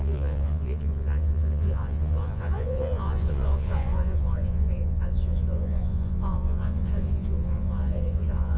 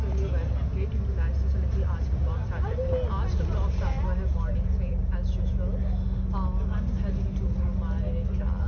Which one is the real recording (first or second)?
second